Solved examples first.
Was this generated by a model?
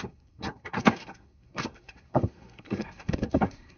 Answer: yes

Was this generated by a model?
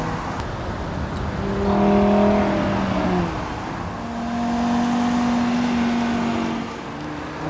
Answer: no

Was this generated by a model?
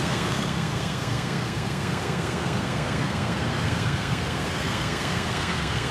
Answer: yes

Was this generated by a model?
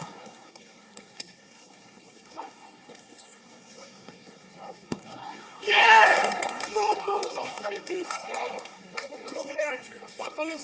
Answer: yes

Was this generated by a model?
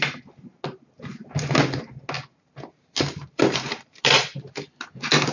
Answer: no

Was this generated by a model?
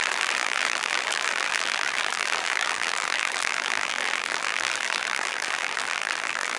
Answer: yes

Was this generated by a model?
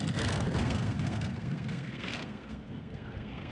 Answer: yes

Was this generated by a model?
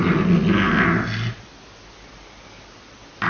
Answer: no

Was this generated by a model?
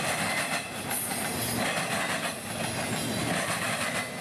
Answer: no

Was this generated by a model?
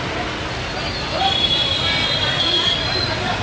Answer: no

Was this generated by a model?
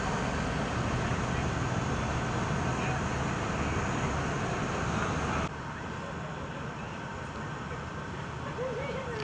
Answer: no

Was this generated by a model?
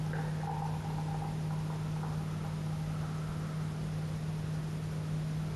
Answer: no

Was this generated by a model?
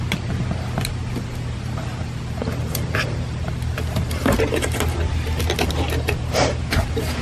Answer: no